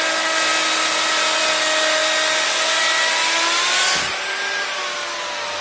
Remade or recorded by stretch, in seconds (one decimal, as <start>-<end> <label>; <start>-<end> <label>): 0.0-5.6 recorded